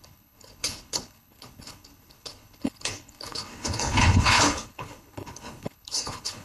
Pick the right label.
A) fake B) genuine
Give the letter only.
A